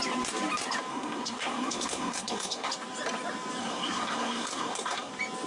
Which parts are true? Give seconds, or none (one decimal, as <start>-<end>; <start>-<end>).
0.0-0.9; 2.7-3.6; 5.1-5.5